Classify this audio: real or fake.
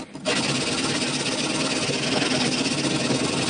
real